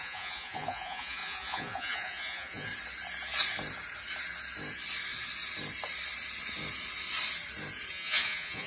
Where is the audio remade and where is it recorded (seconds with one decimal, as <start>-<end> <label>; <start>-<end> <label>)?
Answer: 0.0-2.7 remade; 2.7-7.9 recorded; 7.9-8.7 remade